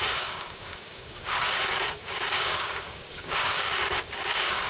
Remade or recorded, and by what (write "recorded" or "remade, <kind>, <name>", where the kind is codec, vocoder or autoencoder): remade, codec, DAC